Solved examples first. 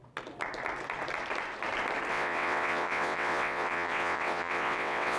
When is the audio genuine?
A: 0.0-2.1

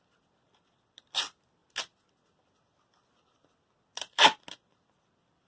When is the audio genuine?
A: 0.0-5.5

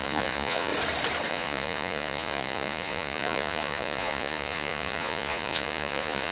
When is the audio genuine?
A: 0.7-1.3

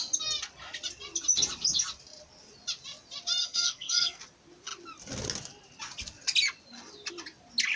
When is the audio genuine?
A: 0.0-3.4; 4.2-7.8

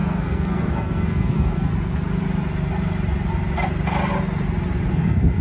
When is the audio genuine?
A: 1.7-4.9

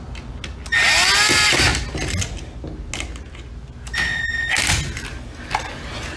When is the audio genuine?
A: 0.0-6.2